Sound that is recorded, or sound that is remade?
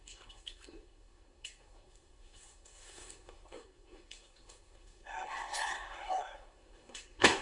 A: remade